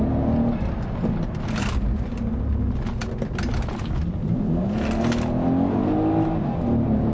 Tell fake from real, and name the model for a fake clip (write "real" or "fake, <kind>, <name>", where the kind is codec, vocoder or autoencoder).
real